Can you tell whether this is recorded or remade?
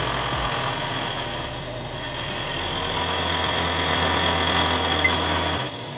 recorded